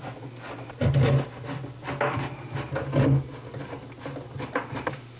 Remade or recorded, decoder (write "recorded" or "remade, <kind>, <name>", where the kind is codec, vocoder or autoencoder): recorded